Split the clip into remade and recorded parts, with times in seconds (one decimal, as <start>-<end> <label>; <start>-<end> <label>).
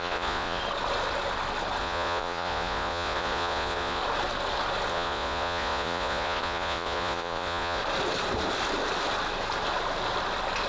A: 0.0-0.6 remade; 0.6-1.8 recorded; 1.8-4.0 remade; 4.0-4.9 recorded; 4.9-7.8 remade; 7.8-10.7 recorded